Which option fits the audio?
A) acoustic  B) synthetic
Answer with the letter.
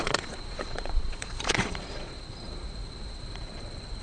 B